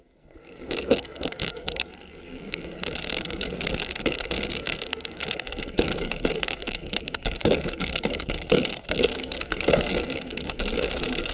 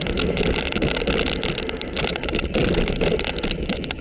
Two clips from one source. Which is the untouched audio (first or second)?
second